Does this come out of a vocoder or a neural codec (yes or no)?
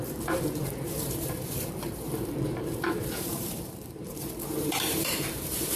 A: yes